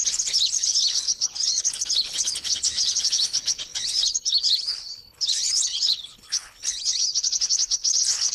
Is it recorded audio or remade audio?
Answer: remade